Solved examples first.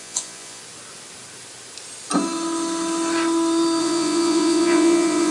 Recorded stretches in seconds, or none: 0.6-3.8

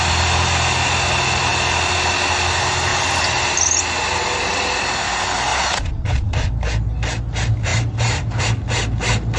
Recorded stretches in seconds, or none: 0.0-5.5; 6.5-9.4

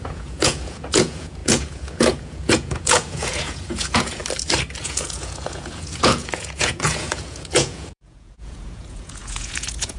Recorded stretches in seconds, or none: 4.2-4.8

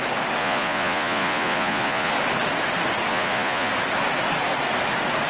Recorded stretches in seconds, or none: 0.0-0.4; 2.1-3.1; 3.7-5.3